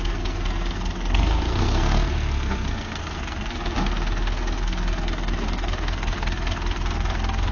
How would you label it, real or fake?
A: fake